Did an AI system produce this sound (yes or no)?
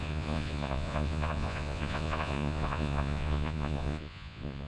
yes